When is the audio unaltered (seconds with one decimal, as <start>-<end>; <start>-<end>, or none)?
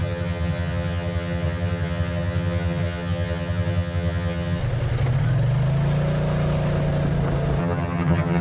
4.6-7.6